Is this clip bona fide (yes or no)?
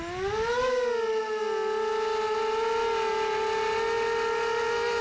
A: yes